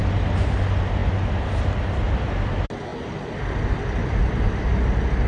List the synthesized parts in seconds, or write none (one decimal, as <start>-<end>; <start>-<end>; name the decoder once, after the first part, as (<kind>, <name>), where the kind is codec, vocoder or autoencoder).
none